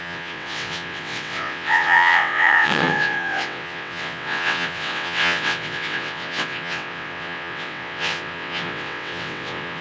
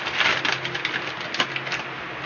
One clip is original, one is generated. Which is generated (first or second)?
first